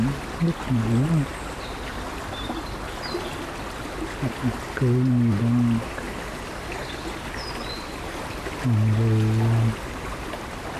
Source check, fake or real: real